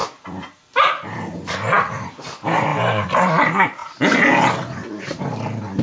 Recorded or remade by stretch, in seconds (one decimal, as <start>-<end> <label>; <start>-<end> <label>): 0.0-5.8 recorded